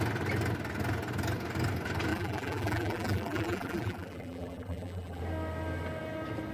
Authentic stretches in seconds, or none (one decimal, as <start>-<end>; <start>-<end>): 0.0-2.1; 5.2-6.5